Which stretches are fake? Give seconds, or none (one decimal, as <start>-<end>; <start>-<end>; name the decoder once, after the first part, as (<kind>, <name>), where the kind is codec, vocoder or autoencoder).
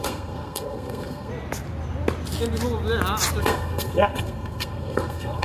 0.0-1.3 (codec, SNAC); 3.4-5.4